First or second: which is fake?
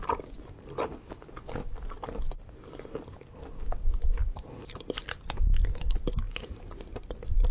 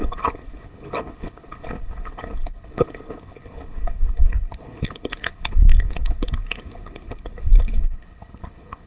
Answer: second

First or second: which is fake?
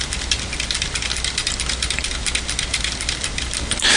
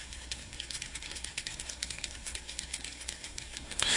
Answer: second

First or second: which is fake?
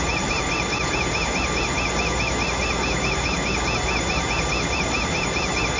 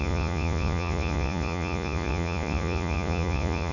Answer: second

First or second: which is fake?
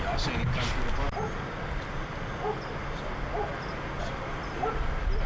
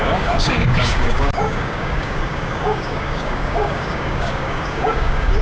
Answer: second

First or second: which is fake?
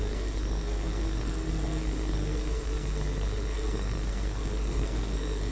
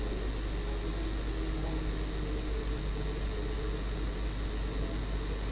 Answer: first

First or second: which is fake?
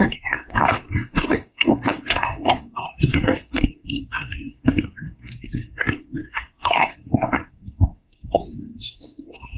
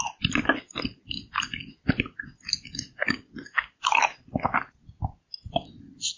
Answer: first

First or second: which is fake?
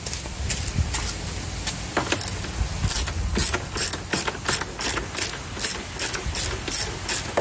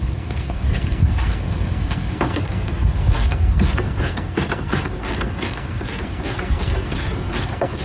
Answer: second